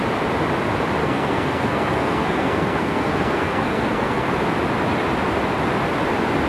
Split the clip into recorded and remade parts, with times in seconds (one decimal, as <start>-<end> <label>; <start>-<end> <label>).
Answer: 0.0-1.0 recorded; 1.0-4.3 remade; 4.3-6.5 recorded